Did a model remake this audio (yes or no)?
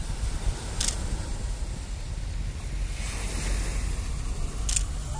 no